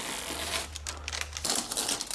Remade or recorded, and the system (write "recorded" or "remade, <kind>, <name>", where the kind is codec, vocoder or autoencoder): recorded